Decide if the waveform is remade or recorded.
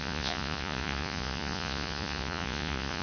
remade